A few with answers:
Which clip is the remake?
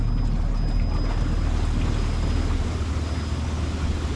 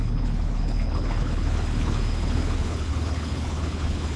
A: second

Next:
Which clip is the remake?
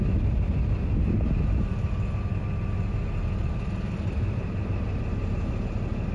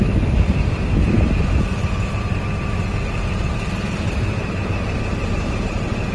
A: second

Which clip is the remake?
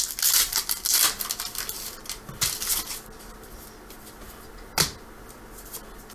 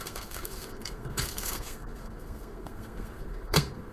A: second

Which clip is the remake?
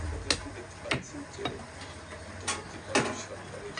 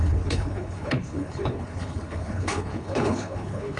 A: second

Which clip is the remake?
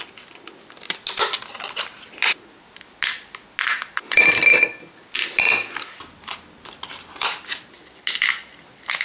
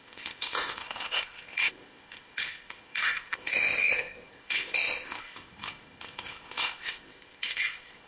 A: second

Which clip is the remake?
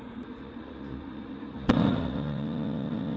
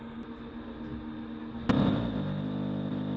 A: first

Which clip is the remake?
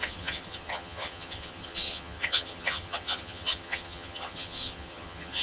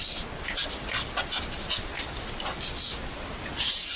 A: first